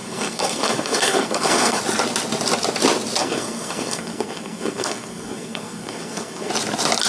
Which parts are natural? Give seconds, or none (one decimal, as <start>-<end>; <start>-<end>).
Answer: 1.8-3.2; 6.5-7.1